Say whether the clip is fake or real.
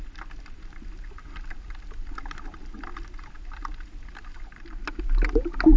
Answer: real